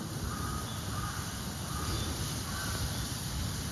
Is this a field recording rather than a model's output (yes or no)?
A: yes